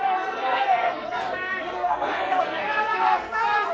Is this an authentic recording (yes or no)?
no